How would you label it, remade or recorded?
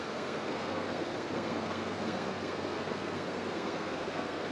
remade